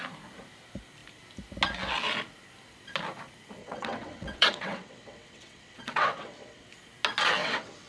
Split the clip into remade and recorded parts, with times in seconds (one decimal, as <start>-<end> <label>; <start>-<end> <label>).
0.0-3.6 recorded; 3.6-6.7 remade; 6.7-7.4 recorded; 7.4-7.9 remade